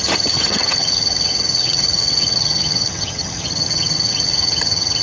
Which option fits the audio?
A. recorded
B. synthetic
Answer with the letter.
B